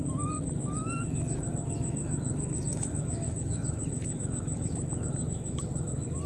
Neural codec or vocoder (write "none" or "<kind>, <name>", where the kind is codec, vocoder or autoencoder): autoencoder, DAC-VAE